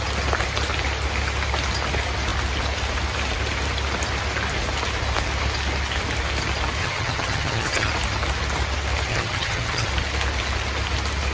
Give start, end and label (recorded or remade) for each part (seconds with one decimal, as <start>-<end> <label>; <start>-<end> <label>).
0.0-6.8 recorded; 6.8-7.9 remade; 7.9-9.1 recorded; 9.1-9.9 remade; 9.9-11.3 recorded